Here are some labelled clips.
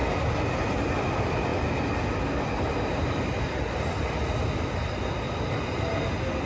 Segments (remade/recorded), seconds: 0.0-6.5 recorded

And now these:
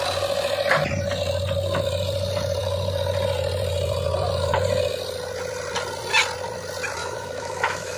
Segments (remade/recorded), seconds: 0.0-7.0 recorded; 7.0-8.0 remade

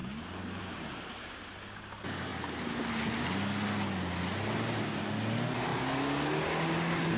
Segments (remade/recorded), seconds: 0.0-7.2 recorded

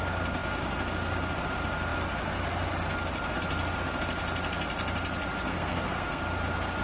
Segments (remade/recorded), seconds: 0.0-5.5 recorded; 5.5-6.2 remade; 6.2-6.8 recorded

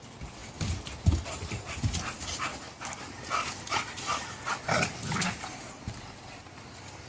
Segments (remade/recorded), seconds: 0.0-2.5 recorded; 2.5-3.0 remade; 3.0-7.1 recorded